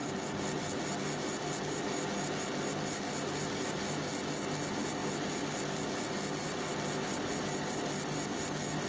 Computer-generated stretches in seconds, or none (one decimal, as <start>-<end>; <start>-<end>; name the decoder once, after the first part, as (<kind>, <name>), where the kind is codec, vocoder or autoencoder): none